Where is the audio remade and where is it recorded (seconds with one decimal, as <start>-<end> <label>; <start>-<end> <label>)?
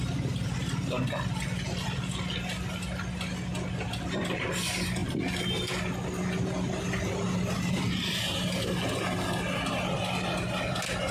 0.0-11.1 recorded